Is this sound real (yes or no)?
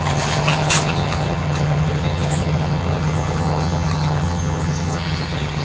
no